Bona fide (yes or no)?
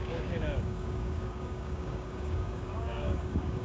no